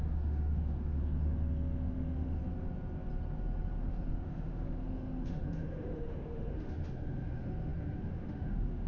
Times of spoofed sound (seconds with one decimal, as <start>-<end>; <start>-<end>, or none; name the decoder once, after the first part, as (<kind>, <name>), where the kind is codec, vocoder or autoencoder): 0.0-2.4 (autoencoder, DAC-VAE); 3.8-8.9